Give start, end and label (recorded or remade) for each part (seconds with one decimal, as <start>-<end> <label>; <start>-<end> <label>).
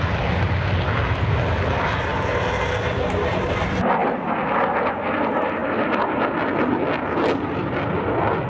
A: 0.0-8.5 recorded